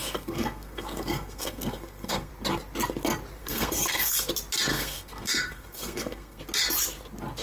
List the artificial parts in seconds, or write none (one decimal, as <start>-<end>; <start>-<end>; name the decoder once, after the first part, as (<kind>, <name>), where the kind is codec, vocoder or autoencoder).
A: 0.0-2.3 (codec, SNAC); 3.4-4.3; 4.7-6.4